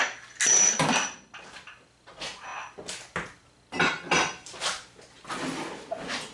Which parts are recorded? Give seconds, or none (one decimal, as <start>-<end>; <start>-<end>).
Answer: 0.0-6.3